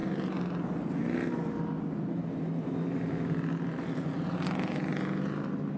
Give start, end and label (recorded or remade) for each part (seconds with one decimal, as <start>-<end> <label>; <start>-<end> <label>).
0.0-5.8 recorded